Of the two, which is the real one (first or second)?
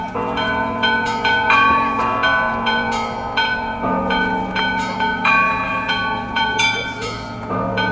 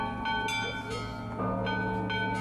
second